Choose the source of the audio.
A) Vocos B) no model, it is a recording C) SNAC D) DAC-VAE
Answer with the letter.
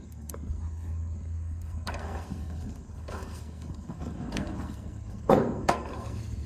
C